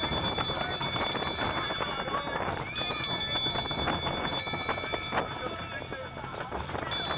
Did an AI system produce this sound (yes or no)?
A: no